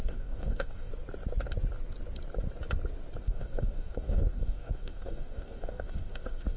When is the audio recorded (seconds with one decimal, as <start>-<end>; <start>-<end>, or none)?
0.9-3.2